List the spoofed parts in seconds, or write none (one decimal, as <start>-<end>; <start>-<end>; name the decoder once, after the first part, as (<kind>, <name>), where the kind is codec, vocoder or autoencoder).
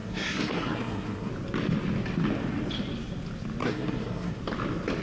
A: 0.0-1.3 (codec, SNAC); 3.6-4.4